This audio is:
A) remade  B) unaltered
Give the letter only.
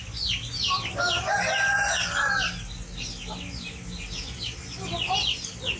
B